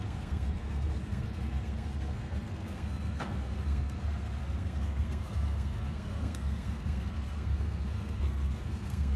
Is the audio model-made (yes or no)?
yes